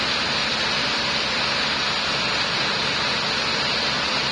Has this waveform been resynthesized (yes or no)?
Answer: no